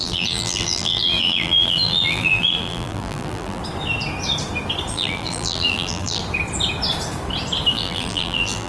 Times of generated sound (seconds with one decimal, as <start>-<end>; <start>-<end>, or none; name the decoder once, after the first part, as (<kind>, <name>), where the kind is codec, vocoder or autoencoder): 0.0-3.6 (vocoder, BigVGAN v2); 4.9-6.2; 7.7-8.7